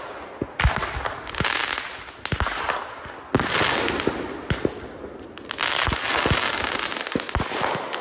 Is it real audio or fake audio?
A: real